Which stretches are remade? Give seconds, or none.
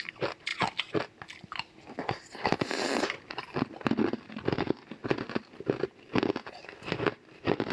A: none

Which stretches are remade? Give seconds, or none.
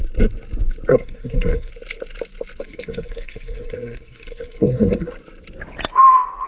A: 0.9-1.7; 2.6-5.1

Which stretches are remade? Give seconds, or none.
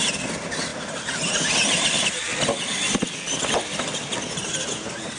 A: none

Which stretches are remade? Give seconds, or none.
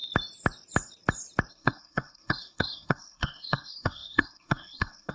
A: 1.5-5.1